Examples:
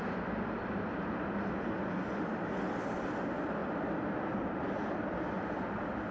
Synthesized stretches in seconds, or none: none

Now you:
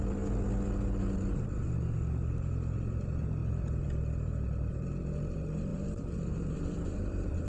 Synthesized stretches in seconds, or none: 5.7-7.5 (vocoder, BigVGAN v2)

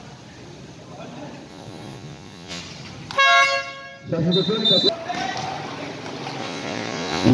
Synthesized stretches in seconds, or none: 1.5-2.6 (vocoder, Vocos); 6.4-7.3